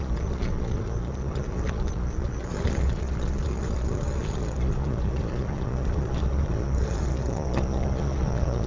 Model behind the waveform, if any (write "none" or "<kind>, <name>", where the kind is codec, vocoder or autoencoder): vocoder, Vocos